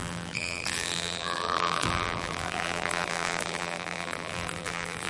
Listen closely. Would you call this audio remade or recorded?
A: remade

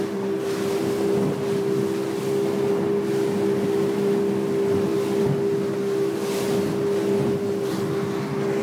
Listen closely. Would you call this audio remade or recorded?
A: recorded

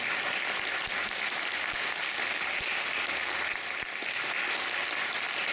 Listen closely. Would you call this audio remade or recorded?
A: recorded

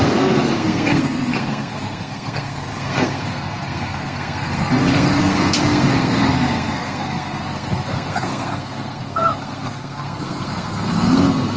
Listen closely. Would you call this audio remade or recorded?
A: remade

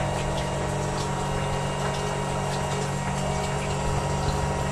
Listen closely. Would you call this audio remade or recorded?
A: recorded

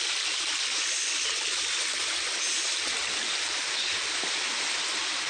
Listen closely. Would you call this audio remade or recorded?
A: recorded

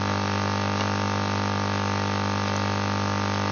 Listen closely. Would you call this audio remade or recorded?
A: recorded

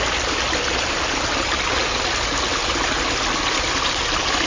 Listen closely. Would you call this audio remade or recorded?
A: recorded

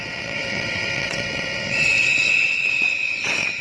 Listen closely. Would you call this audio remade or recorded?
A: remade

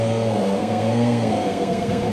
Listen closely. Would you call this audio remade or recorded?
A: remade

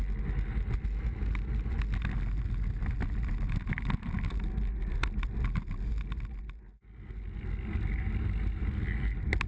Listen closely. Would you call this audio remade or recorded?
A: recorded